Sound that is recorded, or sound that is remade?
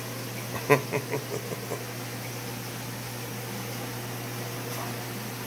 recorded